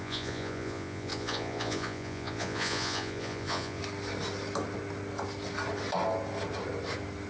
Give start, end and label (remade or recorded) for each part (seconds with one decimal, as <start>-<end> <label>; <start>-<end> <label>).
0.0-3.8 remade; 3.8-7.3 recorded